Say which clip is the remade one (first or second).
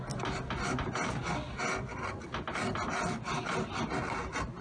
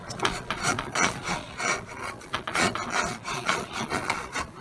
second